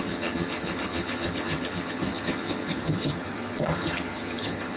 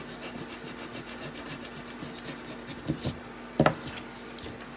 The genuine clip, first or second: second